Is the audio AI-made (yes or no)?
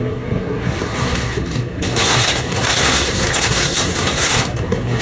yes